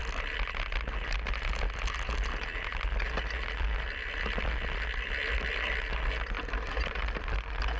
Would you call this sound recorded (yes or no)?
yes